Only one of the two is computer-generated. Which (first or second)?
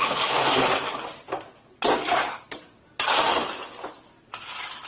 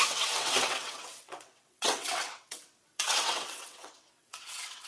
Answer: second